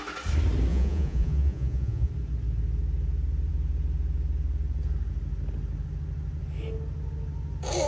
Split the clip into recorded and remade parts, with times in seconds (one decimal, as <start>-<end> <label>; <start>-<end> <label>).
0.0-0.7 recorded; 0.7-2.1 remade; 2.1-7.9 recorded